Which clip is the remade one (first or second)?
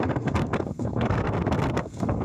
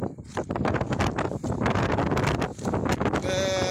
first